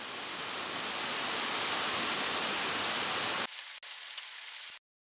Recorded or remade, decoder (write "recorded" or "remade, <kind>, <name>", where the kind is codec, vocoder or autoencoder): recorded